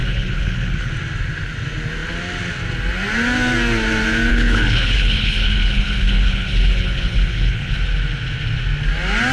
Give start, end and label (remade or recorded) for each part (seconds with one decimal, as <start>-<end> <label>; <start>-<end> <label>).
0.0-0.9 remade; 0.9-4.3 recorded; 4.3-7.7 remade; 7.7-9.3 recorded